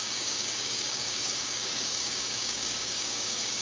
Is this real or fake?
fake